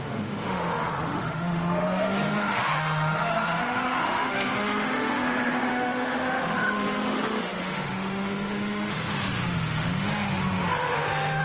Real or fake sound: fake